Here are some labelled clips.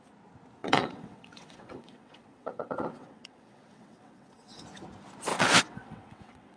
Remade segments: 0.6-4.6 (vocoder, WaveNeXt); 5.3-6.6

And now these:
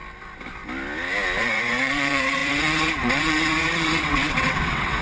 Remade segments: 1.4-5.0 (vocoder, WaveNeXt)

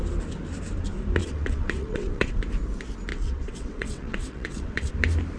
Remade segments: 1.2-2.4 (vocoder, WaveNeXt); 3.1-4.9